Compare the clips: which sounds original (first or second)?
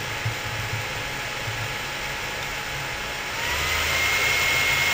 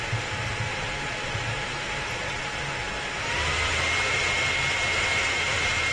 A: first